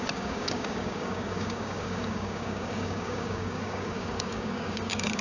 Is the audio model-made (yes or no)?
yes